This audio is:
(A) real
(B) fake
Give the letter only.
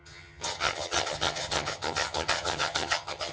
B